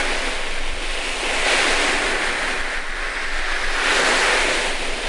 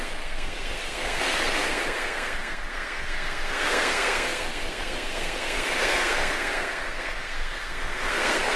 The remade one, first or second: second